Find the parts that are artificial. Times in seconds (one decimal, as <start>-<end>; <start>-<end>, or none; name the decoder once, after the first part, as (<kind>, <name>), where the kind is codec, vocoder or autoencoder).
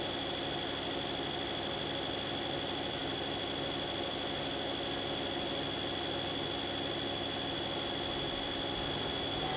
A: none